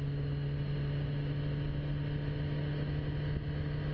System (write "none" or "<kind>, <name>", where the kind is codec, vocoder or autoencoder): none